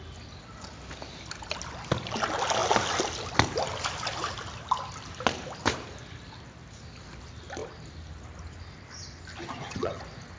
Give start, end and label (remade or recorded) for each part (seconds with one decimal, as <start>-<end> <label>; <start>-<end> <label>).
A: 0.0-9.4 recorded; 9.4-10.0 remade; 10.0-10.4 recorded